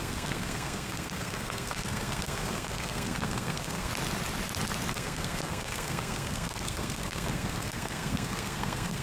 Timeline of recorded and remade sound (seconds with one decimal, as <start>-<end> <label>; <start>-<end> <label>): 0.0-3.9 remade; 3.9-4.9 recorded; 4.9-9.0 remade